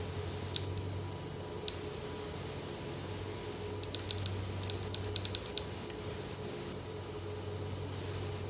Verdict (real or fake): real